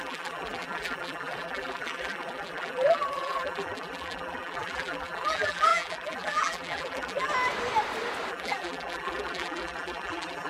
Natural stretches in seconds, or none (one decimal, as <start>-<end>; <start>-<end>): 7.3-8.3